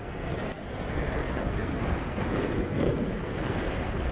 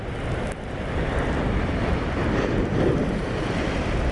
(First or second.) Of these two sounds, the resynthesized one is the first